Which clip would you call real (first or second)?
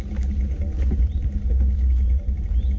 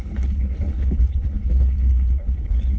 first